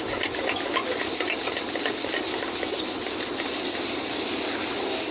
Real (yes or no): yes